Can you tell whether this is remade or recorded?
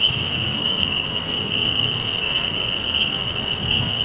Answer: remade